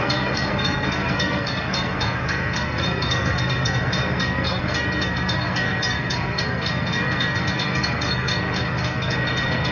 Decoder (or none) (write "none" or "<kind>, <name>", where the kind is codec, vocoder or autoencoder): codec, SNAC